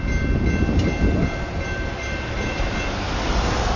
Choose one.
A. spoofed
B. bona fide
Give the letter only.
B